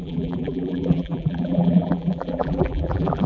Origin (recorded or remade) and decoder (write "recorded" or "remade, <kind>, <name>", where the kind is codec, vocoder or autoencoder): remade, vocoder, BigVGAN v2